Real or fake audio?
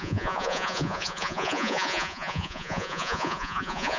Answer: fake